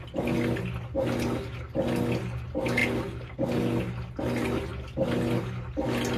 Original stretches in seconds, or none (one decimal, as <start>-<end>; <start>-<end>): 0.0-6.2